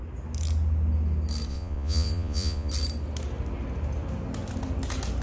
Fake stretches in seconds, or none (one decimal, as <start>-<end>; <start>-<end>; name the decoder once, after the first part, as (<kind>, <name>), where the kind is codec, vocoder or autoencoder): 1.5-2.7 (vocoder, Vocos)